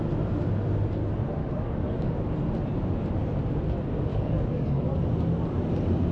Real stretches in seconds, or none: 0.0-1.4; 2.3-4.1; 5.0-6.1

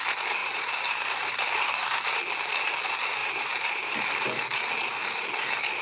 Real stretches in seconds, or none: 0.0-0.4; 2.2-3.2; 4.0-5.8

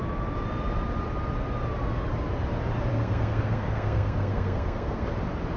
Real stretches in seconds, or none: 0.0-2.9; 5.1-5.6

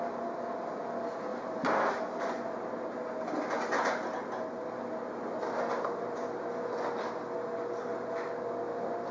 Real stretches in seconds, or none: 0.0-9.1